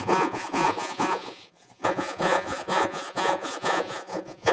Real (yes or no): no